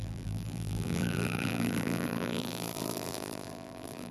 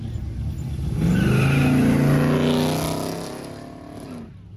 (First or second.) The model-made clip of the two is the first